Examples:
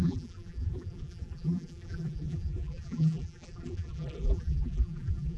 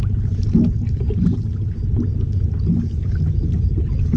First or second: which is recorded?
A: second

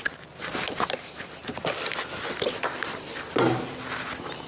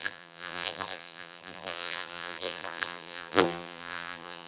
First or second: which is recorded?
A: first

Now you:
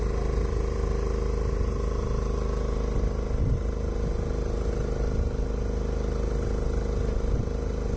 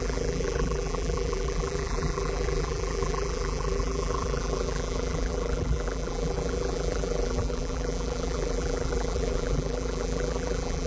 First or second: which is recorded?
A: first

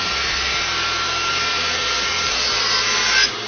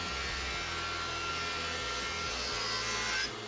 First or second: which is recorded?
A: second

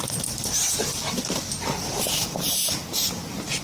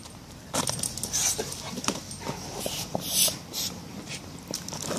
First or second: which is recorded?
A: second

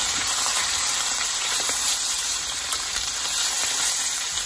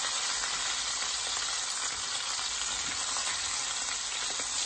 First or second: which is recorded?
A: second